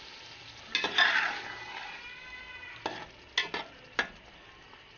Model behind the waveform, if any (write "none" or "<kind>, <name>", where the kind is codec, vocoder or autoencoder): none